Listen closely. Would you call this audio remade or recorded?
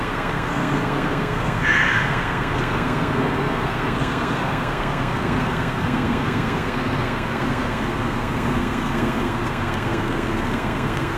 remade